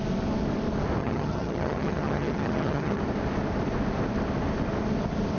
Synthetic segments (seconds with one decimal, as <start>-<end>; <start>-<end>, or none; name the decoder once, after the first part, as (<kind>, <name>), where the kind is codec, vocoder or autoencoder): 1.0-3.0 (vocoder, HiFi-GAN)